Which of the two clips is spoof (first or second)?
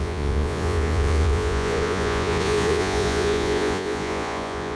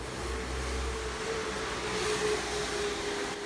first